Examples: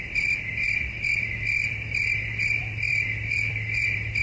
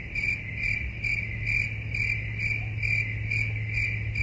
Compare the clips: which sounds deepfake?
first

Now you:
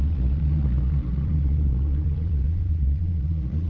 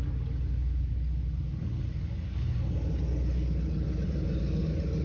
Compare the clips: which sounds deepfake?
first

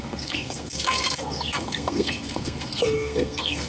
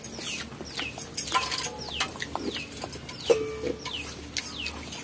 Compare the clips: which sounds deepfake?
first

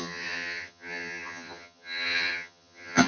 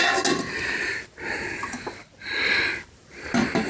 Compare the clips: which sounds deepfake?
first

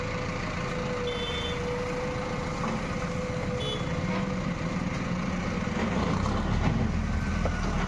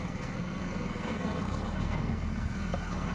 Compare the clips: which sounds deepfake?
second